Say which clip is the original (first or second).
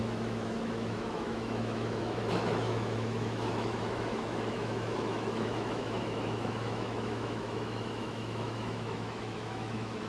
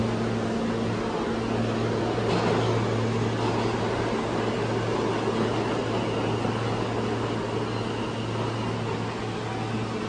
second